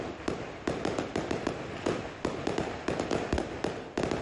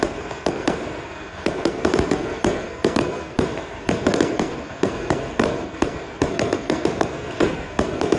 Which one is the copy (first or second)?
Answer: second